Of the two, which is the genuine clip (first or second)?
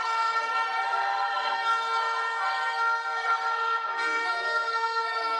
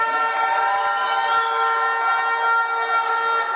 second